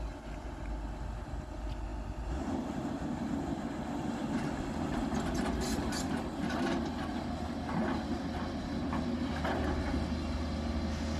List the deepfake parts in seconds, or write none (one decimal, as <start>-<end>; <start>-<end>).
none